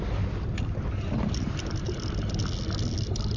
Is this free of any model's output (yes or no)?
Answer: yes